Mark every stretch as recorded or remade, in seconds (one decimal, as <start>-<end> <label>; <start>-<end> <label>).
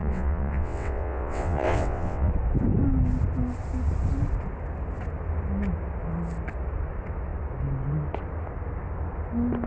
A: 0.0-2.3 remade; 2.3-9.7 recorded